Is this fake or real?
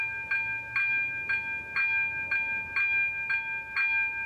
real